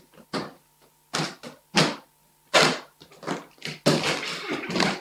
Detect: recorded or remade recorded